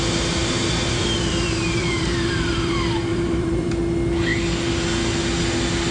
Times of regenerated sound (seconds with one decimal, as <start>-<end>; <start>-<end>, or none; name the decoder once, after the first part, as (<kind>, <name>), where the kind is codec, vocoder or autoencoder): 0.4-2.7 (vocoder, BigVGAN v2); 3.1-3.7